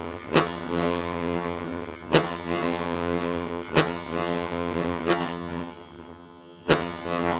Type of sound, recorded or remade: remade